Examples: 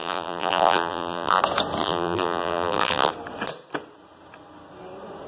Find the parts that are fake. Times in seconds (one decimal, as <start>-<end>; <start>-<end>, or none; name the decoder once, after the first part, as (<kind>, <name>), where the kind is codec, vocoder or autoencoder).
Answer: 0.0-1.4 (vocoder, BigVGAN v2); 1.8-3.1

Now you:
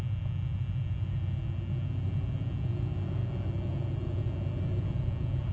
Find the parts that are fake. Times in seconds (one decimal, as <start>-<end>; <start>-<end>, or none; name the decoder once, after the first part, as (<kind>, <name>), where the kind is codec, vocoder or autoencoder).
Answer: none

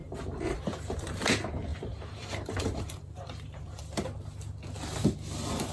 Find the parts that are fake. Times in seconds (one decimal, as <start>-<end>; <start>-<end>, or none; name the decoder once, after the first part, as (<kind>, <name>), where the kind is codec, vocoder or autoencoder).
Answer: 0.0-1.0 (vocoder, BigVGAN v2); 1.7-3.8

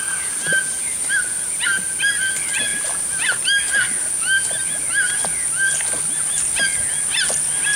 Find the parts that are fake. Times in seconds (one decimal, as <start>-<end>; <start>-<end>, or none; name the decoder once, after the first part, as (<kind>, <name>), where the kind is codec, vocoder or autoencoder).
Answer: none

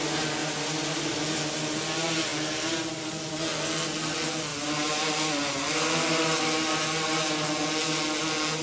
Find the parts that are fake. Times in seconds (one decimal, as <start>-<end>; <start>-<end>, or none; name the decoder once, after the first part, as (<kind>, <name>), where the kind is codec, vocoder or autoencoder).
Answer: 0.4-1.1 (vocoder, BigVGAN v2)

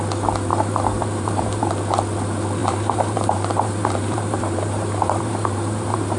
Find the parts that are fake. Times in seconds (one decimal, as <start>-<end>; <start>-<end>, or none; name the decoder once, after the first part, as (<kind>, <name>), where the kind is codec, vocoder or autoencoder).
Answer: 0.5-1.7 (vocoder, BigVGAN v2); 2.6-6.2

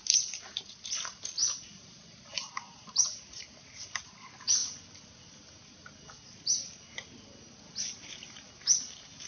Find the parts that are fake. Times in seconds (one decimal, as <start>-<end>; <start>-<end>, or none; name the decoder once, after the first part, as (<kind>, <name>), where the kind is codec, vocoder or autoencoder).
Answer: 0.0-0.8 (vocoder, BigVGAN v2); 1.4-4.1